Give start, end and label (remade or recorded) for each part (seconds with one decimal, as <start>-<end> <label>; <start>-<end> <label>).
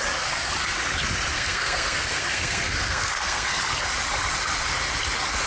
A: 0.0-1.3 recorded; 1.3-3.6 remade; 3.6-5.5 recorded